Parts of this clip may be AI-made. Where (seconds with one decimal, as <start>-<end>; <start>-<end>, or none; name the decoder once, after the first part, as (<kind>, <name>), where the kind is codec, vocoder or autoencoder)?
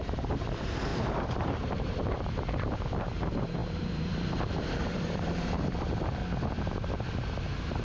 0.0-6.2 (vocoder, BigVGAN v2); 7.3-7.8